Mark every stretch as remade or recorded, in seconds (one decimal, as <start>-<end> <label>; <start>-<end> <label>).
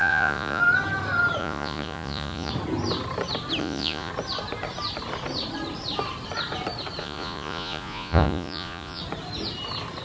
0.0-0.6 remade; 0.6-1.4 recorded; 1.4-2.5 remade; 2.5-3.6 recorded; 3.6-4.1 remade; 4.1-7.0 recorded; 7.0-9.0 remade; 9.0-10.0 recorded